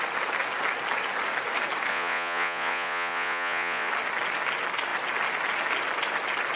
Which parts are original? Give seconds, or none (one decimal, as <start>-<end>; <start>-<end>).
0.0-1.9; 3.9-6.6